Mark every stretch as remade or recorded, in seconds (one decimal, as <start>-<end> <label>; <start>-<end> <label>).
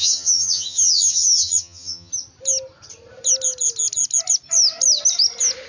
0.0-2.1 remade; 2.1-5.7 recorded